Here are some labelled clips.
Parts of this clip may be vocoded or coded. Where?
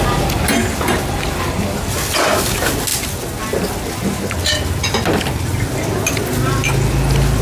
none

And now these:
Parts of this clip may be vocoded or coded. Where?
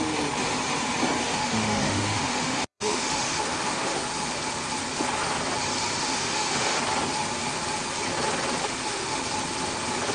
1.3-4.4 (autoencoder, DAC-VAE); 6.0-6.8; 8.6-9.2